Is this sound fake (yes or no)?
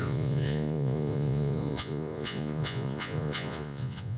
yes